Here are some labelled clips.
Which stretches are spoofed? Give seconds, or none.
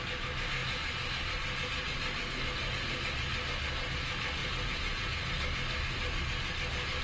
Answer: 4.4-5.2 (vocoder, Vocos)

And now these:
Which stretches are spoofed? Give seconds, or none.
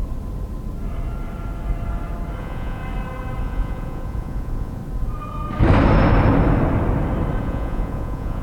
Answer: 2.4-2.8 (vocoder, Vocos); 3.4-4.8; 7.4-8.4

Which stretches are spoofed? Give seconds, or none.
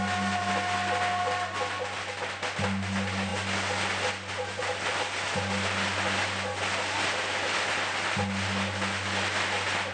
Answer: none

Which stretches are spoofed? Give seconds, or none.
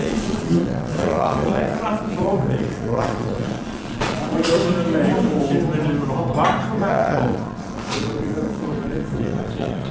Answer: 0.0-4.6 (vocoder, Vocos); 6.9-9.9